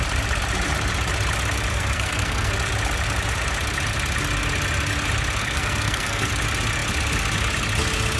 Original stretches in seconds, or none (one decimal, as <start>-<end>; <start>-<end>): 0.0-1.7; 2.5-5.4; 6.3-8.2